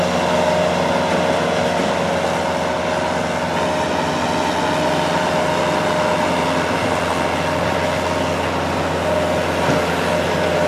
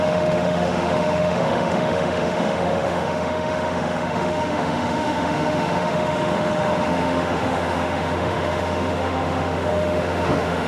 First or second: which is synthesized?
second